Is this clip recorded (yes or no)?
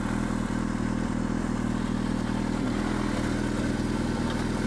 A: yes